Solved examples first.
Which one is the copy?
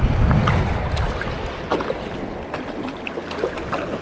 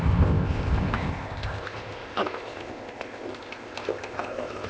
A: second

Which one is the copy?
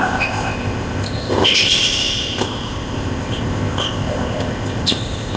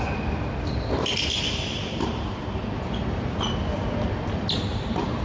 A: first